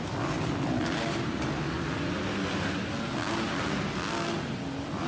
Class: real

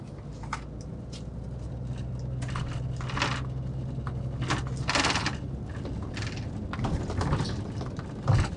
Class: real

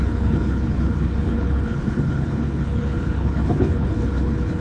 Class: fake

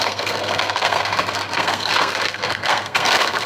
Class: fake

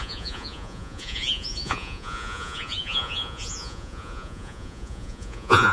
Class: fake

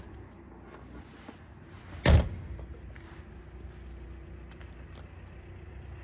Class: real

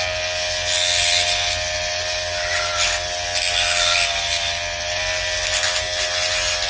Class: real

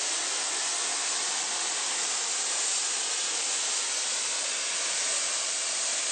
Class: real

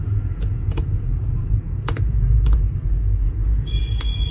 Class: fake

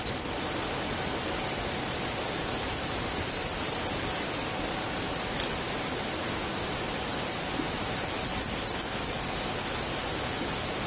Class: real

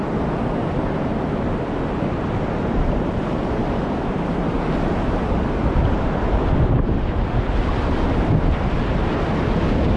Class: real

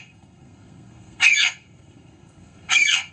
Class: fake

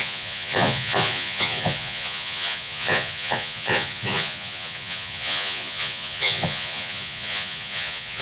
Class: fake